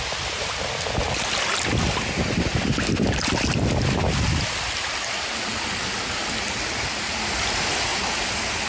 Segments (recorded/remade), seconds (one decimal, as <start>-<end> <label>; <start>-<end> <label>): 0.0-8.7 recorded